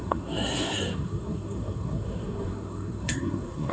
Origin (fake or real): fake